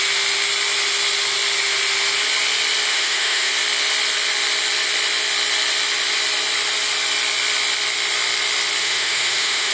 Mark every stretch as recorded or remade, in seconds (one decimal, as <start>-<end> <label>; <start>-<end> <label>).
0.0-2.9 recorded; 2.9-3.5 remade; 3.5-8.8 recorded; 8.8-9.7 remade